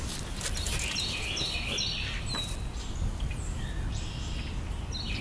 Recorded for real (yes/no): yes